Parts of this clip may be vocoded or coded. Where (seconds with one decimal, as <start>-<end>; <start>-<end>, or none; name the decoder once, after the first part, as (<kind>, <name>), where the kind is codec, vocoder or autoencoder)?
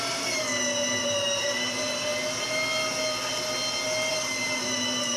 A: 0.0-0.5 (vocoder, BigVGAN v2); 1.0-2.1; 4.1-5.2